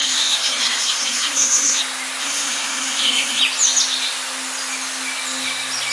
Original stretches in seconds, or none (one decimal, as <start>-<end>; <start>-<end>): 1.8-2.2; 3.4-5.9